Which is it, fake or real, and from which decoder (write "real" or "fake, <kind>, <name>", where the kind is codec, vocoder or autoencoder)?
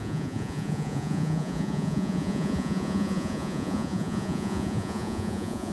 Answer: fake, vocoder, Vocos